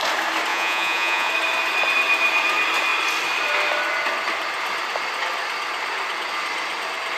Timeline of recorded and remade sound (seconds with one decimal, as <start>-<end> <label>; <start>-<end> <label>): 0.0-0.5 recorded; 0.5-1.3 remade; 1.3-7.2 recorded